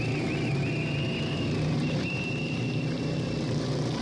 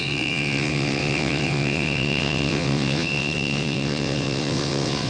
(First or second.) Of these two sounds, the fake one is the second